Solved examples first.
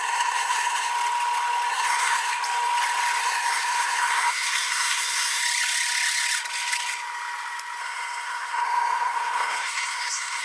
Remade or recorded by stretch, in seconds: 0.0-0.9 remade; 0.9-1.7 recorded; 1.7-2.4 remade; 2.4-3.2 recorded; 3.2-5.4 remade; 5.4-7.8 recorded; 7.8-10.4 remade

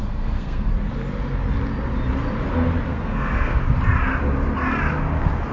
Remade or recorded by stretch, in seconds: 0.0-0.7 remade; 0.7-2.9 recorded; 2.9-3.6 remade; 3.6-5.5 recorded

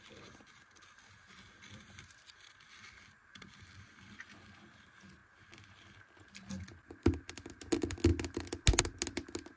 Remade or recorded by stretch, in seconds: 0.0-9.6 recorded

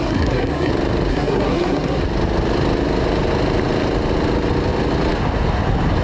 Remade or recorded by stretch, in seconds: 0.0-0.7 remade; 0.7-1.1 recorded; 1.1-2.0 remade; 2.0-6.0 recorded

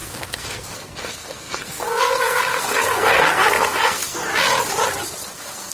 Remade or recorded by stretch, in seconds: 0.0-4.3 remade; 4.3-5.3 recorded; 5.3-5.7 remade